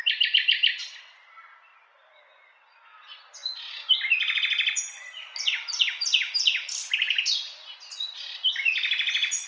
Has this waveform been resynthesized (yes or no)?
no